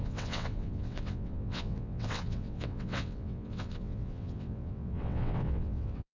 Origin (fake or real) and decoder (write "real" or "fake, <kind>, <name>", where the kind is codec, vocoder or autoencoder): fake, vocoder, WaveNeXt